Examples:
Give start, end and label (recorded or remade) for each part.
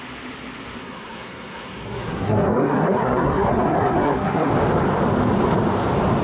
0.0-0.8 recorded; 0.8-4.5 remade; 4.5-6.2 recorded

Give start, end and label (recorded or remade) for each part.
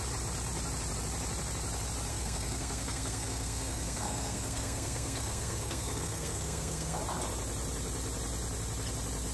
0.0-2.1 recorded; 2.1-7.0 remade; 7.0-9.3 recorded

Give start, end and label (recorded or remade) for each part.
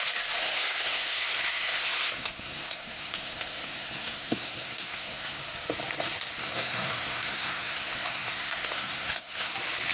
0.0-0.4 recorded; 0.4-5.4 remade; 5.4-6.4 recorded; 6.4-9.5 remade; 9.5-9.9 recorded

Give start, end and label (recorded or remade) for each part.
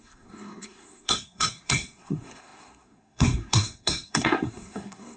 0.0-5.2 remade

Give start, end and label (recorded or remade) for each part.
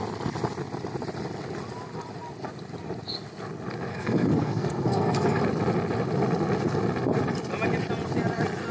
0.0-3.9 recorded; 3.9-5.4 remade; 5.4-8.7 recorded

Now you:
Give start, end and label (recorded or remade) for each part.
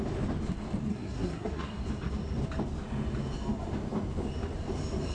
0.0-0.9 recorded; 0.9-1.8 remade; 1.8-5.1 recorded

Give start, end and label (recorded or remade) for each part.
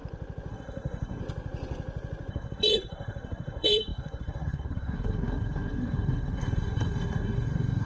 0.0-0.5 recorded; 0.5-1.2 remade; 1.2-2.3 recorded; 2.3-7.9 remade